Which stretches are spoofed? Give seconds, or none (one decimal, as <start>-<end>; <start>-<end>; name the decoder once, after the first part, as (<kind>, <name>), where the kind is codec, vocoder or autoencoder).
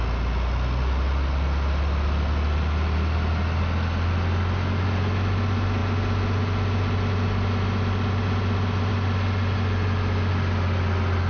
none